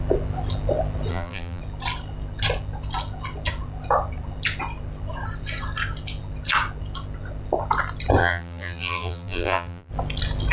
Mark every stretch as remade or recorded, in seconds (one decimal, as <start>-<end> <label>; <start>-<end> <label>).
0.0-1.1 recorded; 1.1-1.6 remade; 1.6-8.2 recorded; 8.2-9.9 remade; 9.9-10.5 recorded